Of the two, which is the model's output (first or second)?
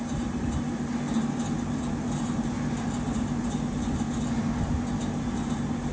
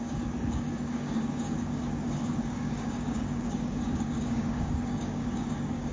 second